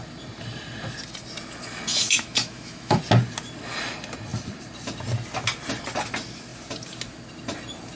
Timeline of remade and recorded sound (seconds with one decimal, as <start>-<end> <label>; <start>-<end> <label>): 0.0-1.9 recorded; 1.9-3.0 remade; 3.0-8.0 recorded